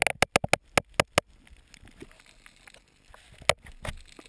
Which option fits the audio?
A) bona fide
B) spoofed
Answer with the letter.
A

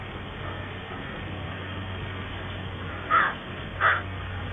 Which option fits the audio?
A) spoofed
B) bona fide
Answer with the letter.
A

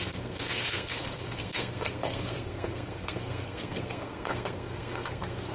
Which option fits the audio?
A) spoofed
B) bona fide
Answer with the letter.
A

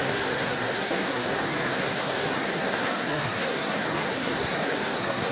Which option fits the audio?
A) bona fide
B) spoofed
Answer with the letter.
B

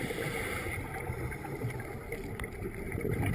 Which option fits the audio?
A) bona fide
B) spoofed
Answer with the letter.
A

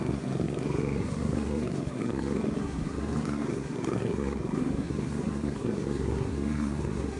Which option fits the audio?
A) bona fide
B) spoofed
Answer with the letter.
B